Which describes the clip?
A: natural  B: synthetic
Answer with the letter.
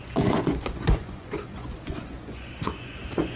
B